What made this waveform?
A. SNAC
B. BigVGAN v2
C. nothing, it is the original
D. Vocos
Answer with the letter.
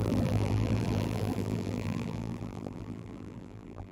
B